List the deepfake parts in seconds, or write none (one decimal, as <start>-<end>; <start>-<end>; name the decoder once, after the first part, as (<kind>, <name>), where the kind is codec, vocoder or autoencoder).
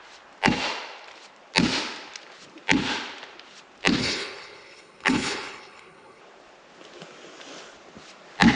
4.0-6.2 (codec, HILCodec)